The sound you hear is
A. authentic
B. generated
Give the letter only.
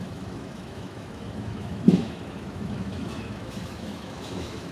B